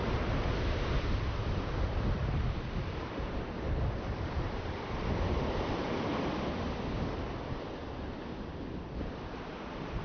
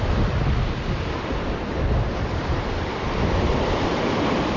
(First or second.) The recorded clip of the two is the second